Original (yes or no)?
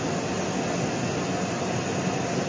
yes